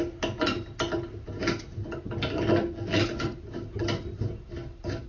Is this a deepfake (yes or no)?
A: no